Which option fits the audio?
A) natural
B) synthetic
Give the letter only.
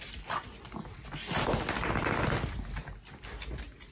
A